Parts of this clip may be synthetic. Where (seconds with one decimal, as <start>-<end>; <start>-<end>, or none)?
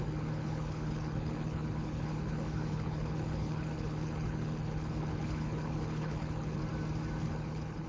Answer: 0.0-6.6; 7.2-7.9